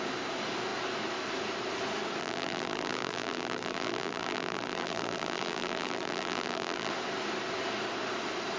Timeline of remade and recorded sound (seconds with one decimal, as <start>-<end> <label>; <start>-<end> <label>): 0.0-2.2 recorded; 2.2-6.9 remade; 6.9-8.6 recorded